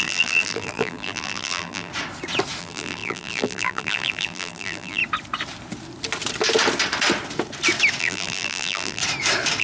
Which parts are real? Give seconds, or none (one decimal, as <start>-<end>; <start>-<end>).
1.9-2.6; 5.0-8.0; 9.0-9.6